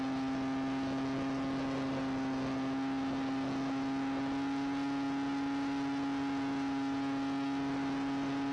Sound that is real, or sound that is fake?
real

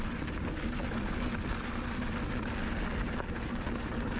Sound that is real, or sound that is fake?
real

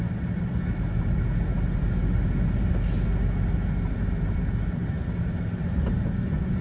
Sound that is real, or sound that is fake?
real